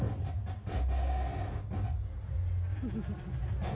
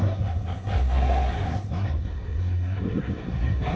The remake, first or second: second